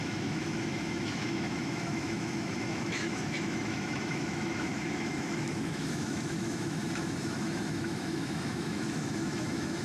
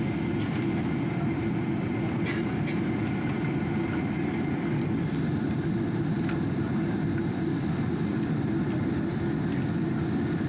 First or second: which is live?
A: second